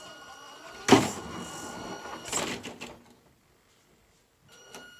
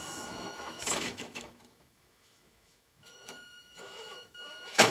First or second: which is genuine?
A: first